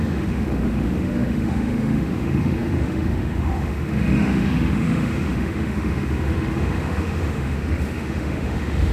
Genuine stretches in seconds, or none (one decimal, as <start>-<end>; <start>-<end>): none